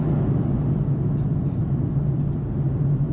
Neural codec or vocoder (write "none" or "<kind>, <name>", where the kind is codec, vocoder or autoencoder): none